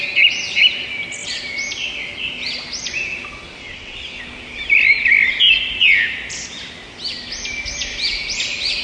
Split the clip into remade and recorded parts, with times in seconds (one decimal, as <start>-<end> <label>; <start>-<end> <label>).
0.0-3.6 recorded; 3.6-4.2 remade; 4.2-8.8 recorded